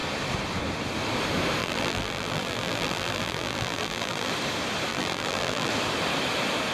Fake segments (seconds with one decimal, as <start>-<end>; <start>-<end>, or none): 1.6-4.3; 4.9-5.7